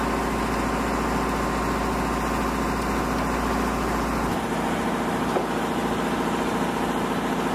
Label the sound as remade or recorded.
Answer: recorded